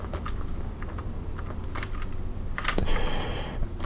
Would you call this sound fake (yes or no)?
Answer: no